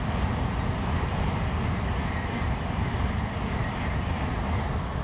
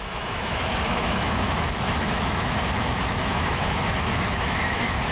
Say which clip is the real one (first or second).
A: first